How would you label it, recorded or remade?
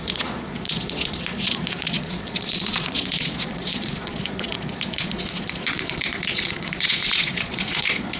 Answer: remade